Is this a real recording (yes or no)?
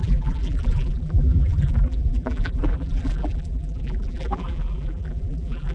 no